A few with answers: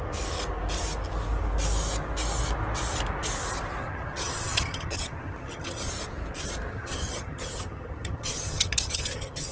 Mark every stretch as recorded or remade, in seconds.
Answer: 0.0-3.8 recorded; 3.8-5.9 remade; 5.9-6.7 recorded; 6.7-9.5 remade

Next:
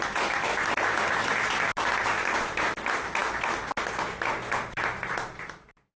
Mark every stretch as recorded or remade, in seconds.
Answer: 0.0-6.0 recorded

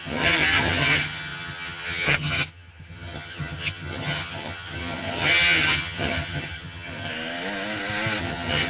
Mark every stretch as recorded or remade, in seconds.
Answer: 0.0-7.1 remade; 7.1-8.2 recorded; 8.2-8.7 remade